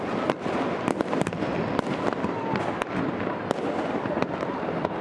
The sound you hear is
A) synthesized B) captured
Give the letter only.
B